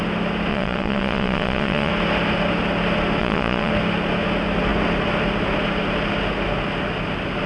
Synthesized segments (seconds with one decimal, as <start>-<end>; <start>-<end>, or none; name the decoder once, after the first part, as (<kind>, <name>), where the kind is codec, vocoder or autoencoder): 0.5-1.9 (vocoder, Vocos); 3.2-3.7